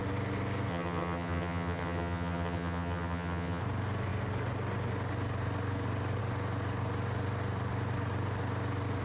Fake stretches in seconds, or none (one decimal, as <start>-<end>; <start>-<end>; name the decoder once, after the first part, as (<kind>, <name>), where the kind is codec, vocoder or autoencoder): 0.7-3.6 (vocoder, HiFi-GAN)